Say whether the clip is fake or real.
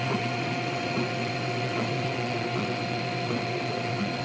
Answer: fake